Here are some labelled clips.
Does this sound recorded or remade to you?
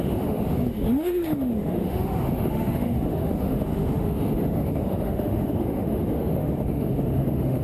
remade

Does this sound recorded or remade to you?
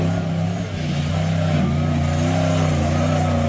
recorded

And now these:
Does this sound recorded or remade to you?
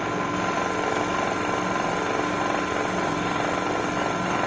recorded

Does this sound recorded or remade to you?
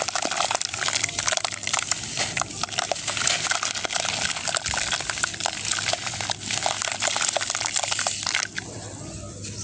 recorded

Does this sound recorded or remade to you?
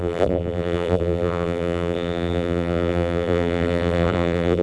remade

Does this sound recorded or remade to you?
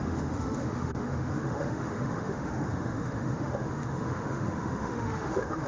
remade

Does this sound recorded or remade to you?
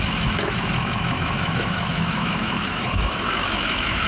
remade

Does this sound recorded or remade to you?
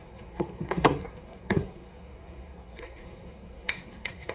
remade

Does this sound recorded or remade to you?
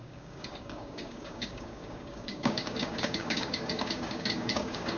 remade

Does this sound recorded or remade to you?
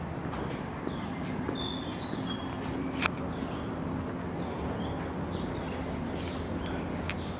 recorded